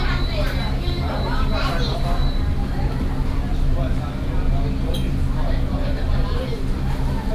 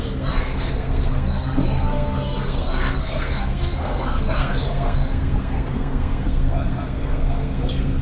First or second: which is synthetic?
second